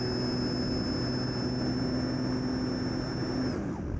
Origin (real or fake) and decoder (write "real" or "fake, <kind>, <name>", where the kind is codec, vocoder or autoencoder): real